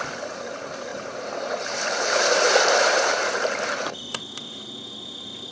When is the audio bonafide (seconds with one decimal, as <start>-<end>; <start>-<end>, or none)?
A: 0.0-0.9; 4.2-5.5